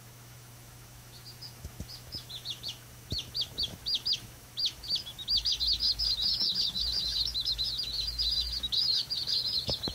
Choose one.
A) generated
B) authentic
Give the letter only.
A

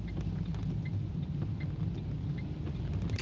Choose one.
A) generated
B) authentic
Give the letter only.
B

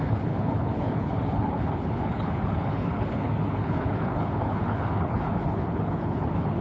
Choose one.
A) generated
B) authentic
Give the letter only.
A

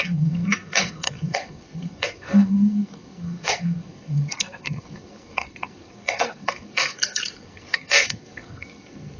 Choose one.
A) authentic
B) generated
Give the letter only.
B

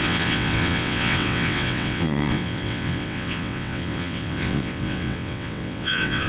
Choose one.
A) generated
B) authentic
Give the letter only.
A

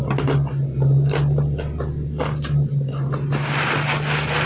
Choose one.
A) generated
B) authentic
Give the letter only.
B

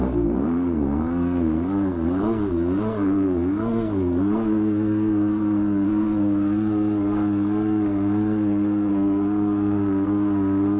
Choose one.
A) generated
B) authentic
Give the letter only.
A